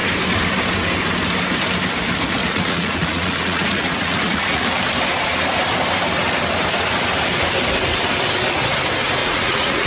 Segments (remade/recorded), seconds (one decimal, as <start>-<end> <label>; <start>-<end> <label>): 0.0-2.4 recorded; 2.4-4.6 remade; 4.6-9.2 recorded; 9.2-9.9 remade